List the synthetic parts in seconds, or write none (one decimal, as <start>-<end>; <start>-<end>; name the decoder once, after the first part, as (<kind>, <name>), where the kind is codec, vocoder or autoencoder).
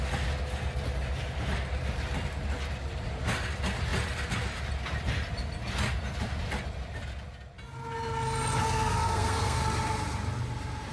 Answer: 8.6-9.6 (codec, SNAC)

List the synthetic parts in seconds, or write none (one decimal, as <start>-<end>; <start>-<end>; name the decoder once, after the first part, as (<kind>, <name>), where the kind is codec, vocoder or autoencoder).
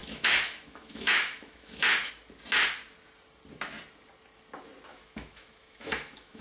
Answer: 0.0-2.1 (autoencoder, DAC-VAE); 4.9-6.4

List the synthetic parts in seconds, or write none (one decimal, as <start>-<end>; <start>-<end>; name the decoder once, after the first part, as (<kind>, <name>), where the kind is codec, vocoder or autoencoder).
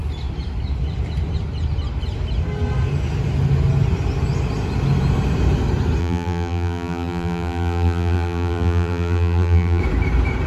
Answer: 6.0-9.8 (vocoder, BigVGAN v2)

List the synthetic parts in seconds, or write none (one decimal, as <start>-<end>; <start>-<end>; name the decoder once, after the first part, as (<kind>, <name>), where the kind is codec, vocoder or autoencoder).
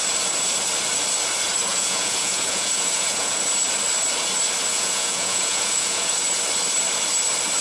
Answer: 1.7-3.4 (vocoder, Vocos); 4.7-6.1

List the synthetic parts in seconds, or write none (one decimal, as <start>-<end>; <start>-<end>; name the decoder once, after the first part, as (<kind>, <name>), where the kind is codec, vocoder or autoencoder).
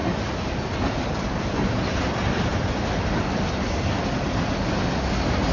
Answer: none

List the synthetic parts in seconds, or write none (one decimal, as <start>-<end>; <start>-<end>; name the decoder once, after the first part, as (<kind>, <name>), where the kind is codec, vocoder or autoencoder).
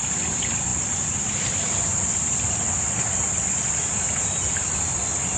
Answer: none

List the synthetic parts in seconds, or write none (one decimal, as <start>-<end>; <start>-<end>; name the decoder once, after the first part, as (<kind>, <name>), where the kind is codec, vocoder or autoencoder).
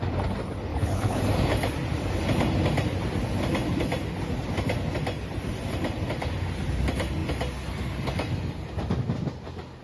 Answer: 0.7-1.2 (codec, HILCodec)